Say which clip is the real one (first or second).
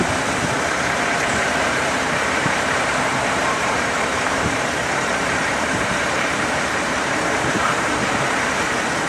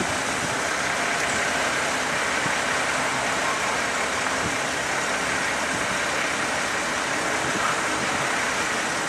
second